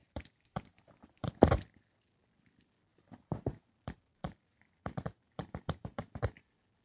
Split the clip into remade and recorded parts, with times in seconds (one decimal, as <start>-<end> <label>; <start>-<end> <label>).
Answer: 0.0-1.3 remade; 1.3-2.9 recorded; 2.9-6.2 remade; 6.2-6.8 recorded